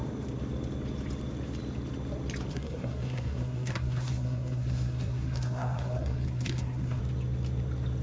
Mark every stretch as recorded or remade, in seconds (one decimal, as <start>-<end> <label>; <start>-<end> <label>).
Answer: 0.0-2.5 recorded; 2.5-7.0 remade; 7.0-8.0 recorded